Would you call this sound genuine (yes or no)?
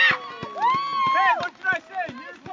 yes